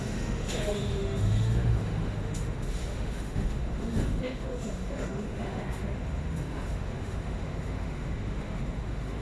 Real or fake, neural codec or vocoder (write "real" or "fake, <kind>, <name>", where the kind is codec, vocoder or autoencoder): fake, autoencoder, DAC-VAE